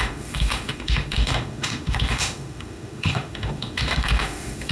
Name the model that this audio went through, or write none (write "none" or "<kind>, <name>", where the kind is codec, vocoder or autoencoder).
autoencoder, DAC-VAE